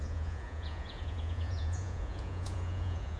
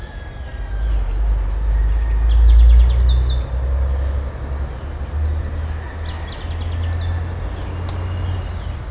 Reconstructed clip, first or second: first